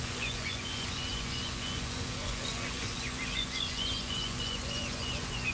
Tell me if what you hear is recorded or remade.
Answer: remade